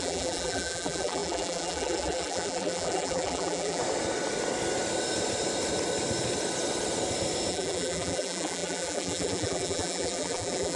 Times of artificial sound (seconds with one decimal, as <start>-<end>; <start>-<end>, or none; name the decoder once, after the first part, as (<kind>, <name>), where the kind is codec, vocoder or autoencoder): 0.0-3.8 (vocoder, BigVGAN v2); 7.5-10.8